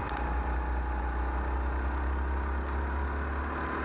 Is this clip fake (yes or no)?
no